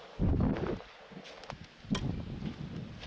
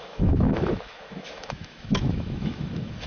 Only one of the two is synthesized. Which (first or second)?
second